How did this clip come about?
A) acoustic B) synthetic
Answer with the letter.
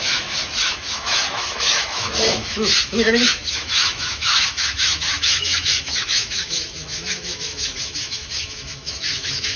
B